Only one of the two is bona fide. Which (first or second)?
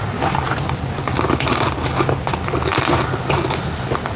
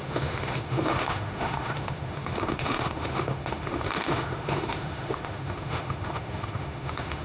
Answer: first